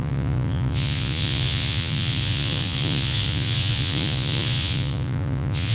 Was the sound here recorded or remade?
remade